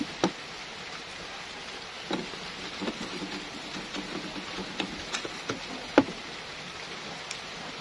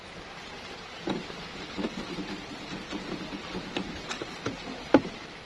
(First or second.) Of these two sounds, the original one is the first